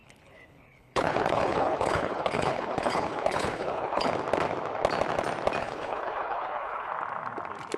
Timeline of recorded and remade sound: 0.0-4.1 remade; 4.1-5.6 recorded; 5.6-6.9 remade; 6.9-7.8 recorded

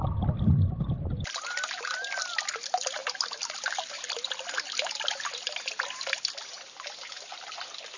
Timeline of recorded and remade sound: 0.0-8.0 recorded